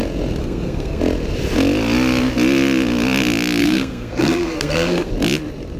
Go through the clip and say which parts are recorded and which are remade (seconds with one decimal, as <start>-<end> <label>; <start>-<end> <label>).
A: 0.0-0.4 recorded; 0.4-1.0 remade; 1.0-3.6 recorded; 3.6-5.1 remade; 5.1-5.8 recorded